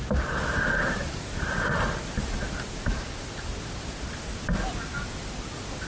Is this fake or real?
real